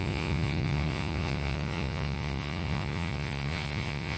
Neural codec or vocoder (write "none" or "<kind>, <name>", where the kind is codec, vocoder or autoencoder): vocoder, Vocos